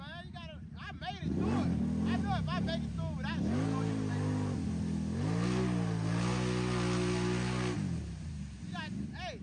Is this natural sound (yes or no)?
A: yes